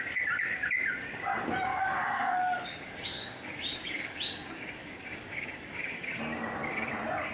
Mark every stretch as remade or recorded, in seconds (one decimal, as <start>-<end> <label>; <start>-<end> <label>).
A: 0.0-1.7 recorded; 1.7-6.1 remade; 6.1-7.3 recorded